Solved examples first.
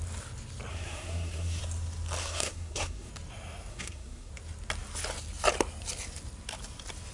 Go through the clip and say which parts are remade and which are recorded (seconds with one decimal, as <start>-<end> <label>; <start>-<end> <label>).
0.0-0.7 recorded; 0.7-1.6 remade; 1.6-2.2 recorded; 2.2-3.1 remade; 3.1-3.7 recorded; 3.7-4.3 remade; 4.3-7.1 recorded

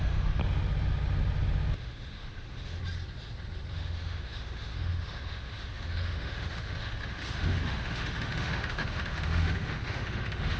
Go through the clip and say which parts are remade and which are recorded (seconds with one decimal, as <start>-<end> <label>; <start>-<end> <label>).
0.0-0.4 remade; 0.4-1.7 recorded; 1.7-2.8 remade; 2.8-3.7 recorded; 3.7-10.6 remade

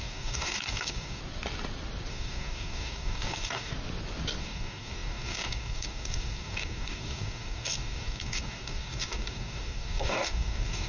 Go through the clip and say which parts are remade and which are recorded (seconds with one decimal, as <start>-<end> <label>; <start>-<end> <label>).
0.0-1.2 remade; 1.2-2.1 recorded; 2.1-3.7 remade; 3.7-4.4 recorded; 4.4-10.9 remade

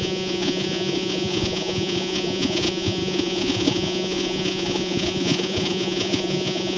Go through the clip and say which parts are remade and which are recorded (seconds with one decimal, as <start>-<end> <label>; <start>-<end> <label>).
0.0-6.8 remade